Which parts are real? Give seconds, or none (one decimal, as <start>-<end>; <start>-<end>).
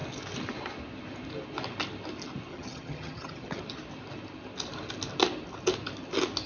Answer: 0.0-2.5; 3.6-6.5